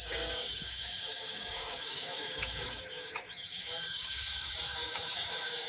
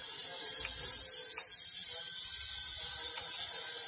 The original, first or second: second